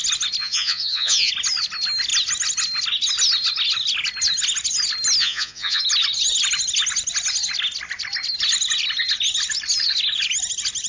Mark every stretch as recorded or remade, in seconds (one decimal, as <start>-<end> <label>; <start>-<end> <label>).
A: 0.0-0.4 recorded; 0.4-1.3 remade; 1.3-5.2 recorded; 5.2-5.8 remade; 5.8-10.9 recorded